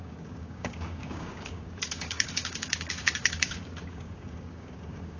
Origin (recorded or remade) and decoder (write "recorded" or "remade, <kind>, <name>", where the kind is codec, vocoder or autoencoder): remade, codec, DAC